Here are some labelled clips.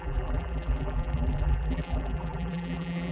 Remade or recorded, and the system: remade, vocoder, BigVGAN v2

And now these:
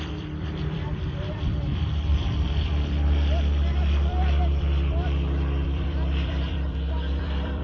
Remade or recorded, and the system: remade, vocoder, BigVGAN v2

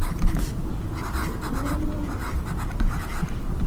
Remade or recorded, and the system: remade, vocoder, BigVGAN v2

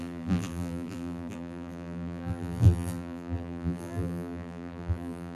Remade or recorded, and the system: remade, vocoder, BigVGAN v2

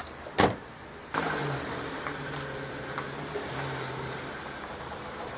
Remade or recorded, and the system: remade, vocoder, BigVGAN v2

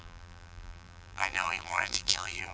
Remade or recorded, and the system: remade, vocoder, BigVGAN v2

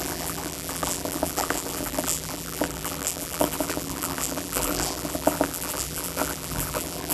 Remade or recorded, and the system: remade, vocoder, BigVGAN v2